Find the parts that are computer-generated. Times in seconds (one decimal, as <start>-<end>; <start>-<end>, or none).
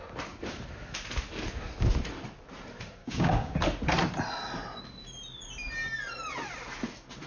3.0-3.6